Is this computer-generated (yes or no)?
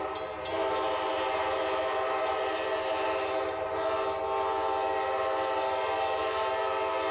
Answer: no